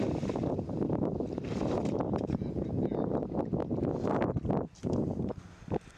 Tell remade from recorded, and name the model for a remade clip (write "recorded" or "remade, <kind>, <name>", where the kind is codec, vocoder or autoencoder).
recorded